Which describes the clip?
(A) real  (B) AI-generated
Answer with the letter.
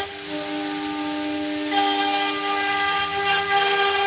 A